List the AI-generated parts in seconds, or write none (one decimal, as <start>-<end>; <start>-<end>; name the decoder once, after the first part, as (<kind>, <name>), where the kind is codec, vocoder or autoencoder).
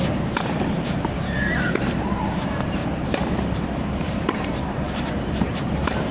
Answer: 0.0-2.8 (vocoder, BigVGAN v2); 3.5-6.1